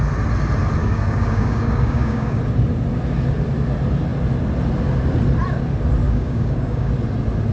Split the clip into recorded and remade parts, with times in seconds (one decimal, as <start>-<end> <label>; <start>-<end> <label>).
0.0-0.8 recorded; 0.8-2.4 remade; 2.4-6.0 recorded; 6.0-6.9 remade; 6.9-7.5 recorded